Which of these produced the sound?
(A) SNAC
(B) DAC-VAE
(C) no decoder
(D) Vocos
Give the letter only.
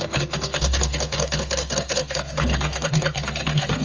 A